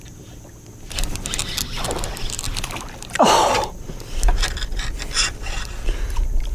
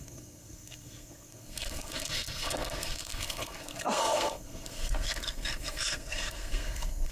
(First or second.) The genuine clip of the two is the first